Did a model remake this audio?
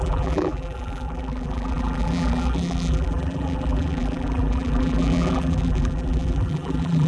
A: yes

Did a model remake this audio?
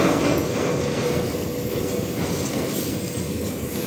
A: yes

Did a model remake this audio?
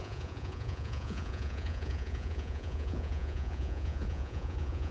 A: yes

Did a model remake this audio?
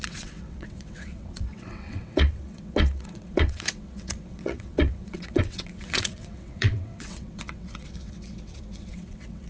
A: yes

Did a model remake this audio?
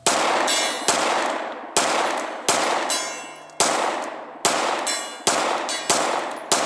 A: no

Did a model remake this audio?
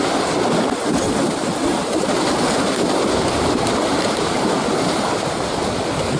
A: no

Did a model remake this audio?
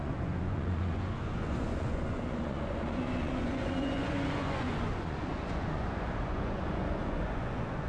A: yes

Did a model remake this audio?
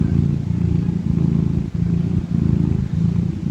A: no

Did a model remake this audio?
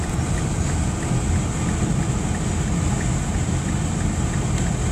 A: no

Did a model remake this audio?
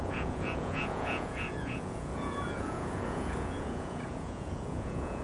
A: yes